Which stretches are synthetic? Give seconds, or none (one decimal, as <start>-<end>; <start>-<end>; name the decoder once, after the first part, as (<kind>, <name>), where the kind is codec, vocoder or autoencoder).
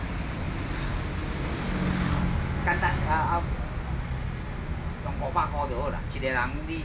none